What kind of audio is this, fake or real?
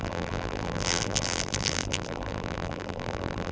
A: fake